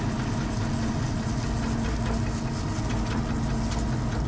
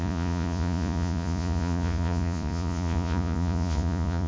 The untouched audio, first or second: first